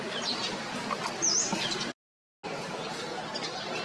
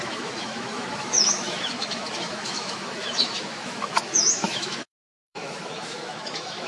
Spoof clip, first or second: second